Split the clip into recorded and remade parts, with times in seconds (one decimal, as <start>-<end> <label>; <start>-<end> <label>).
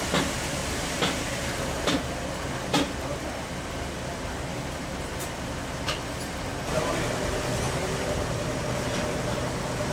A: 0.0-4.5 recorded; 4.5-9.5 remade; 9.5-9.9 recorded